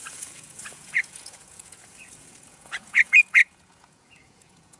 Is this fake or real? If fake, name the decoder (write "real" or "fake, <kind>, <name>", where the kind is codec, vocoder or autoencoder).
fake, vocoder, Vocos